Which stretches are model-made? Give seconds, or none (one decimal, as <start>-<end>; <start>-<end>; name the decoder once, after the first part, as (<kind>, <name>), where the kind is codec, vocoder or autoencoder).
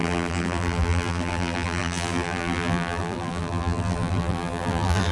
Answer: 0.0-5.1 (vocoder, BigVGAN v2)